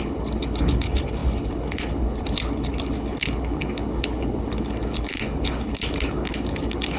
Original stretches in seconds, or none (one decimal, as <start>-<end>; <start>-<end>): none

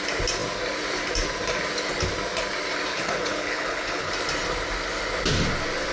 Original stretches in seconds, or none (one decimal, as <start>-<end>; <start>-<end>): 0.0-2.9; 4.1-5.9

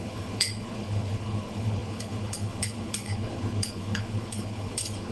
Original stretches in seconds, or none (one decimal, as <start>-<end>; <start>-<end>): none

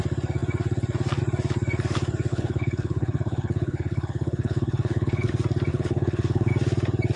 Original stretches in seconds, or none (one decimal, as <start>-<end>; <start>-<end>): 0.0-2.3; 5.3-5.7; 6.5-7.2

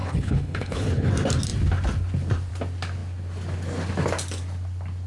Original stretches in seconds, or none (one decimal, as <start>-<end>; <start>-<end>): 1.1-5.1

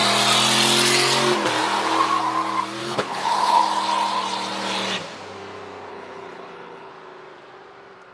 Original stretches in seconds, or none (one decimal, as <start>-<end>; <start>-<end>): 0.0-2.8; 3.6-5.9; 6.9-8.1